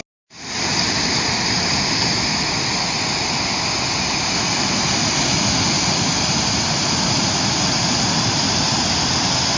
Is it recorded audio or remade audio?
recorded